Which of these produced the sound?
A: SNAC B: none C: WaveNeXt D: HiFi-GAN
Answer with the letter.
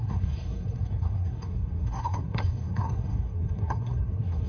A